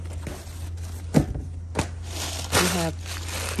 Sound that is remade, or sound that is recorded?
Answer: recorded